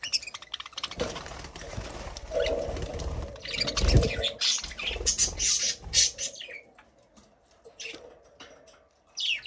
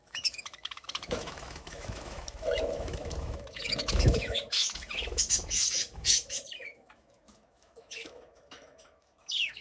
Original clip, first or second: first